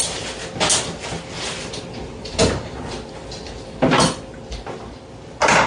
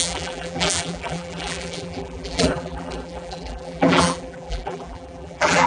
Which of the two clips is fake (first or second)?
second